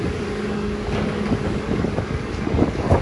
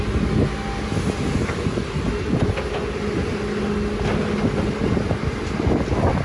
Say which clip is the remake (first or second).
first